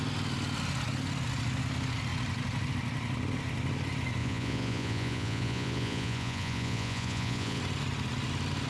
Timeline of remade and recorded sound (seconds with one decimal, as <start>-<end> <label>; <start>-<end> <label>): 0.0-4.2 recorded; 4.2-7.6 remade; 7.6-8.7 recorded